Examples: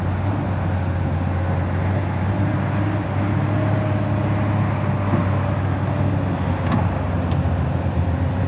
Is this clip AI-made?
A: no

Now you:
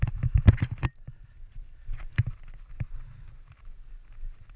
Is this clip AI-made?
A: no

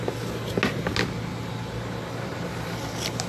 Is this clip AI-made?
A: no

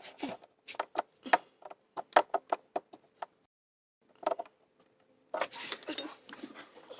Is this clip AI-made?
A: no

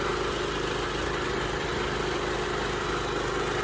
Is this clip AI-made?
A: no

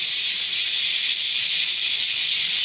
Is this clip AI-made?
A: no